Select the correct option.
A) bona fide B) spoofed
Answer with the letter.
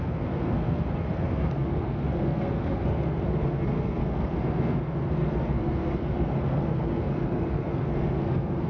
B